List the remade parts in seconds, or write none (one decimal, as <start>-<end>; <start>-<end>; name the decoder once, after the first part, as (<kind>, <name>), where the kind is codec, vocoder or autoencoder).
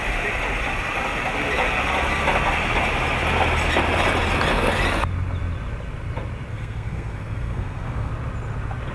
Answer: 6.5-8.1 (codec, SNAC)